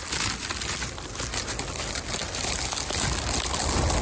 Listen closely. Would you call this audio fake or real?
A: real